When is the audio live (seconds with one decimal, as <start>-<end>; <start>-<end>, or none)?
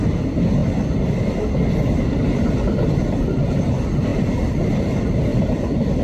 0.0-0.6; 3.5-4.1; 4.8-5.3